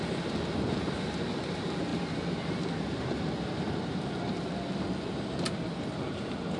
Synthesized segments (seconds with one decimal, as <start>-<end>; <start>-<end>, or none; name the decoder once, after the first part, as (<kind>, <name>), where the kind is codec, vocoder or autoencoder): none